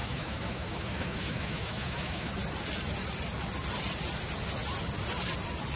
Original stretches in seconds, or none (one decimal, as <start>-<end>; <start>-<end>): 2.3-5.8

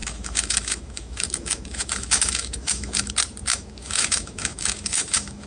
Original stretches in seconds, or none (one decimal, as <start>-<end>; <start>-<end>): 3.1-3.5

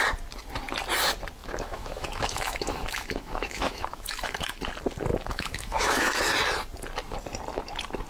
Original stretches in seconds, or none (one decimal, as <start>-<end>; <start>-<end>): 0.0-1.4; 4.6-5.1; 6.2-8.1

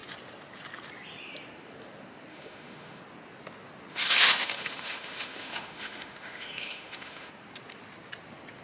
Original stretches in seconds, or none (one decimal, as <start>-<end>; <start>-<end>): 0.0-2.3; 3.0-3.9; 7.3-8.6

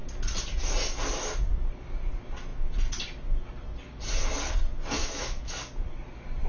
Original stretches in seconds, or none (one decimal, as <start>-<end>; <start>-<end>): 0.0-5.0; 5.6-6.5

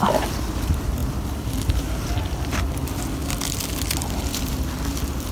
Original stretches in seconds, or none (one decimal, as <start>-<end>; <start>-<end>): 0.0-5.3

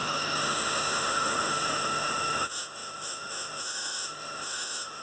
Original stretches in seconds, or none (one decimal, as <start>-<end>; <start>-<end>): none

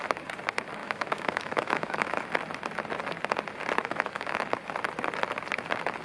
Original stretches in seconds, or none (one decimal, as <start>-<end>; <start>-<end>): 0.0-0.8; 2.1-3.8; 4.4-6.0